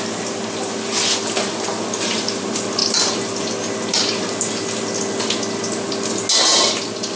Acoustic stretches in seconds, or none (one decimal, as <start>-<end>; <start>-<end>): 0.0-7.2